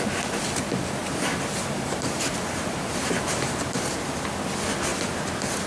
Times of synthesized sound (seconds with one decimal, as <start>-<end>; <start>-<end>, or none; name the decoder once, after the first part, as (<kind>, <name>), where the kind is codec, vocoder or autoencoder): 1.0-4.4 (vocoder, BigVGAN v2)